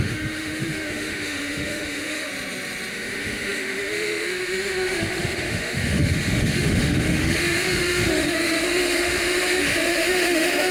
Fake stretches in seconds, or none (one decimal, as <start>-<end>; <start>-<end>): 0.0-2.3; 2.9-10.7